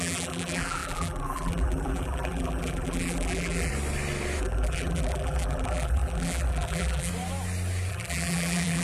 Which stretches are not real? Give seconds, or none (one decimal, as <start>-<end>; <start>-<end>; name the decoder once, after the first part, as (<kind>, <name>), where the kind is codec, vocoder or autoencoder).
0.0-3.7 (vocoder, BigVGAN v2); 4.4-7.1; 7.9-8.8